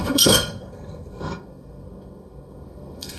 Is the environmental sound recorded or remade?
remade